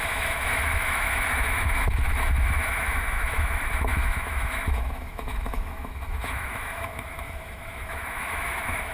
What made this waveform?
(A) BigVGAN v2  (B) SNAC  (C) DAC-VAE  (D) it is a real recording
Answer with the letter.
C